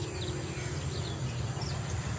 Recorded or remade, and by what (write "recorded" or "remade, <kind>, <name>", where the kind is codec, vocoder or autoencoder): recorded